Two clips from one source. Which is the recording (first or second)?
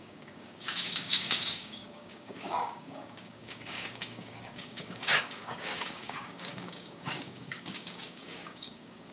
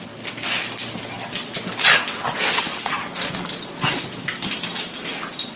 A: second